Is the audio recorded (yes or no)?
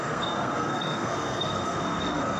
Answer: no